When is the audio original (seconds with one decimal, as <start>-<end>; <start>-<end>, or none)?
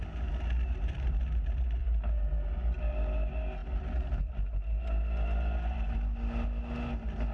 0.0-7.3